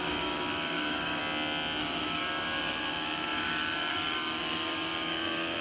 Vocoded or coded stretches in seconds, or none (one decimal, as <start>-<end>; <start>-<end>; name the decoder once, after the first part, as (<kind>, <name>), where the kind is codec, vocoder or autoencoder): 0.0-1.2 (codec, DAC); 1.8-5.6